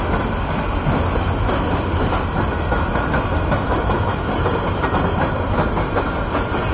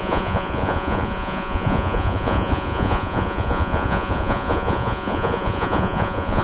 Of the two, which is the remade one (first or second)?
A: second